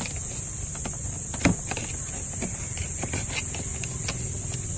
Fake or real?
real